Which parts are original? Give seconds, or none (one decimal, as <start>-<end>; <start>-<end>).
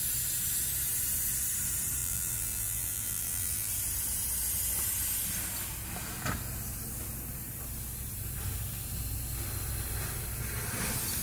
0.0-2.0; 3.7-11.2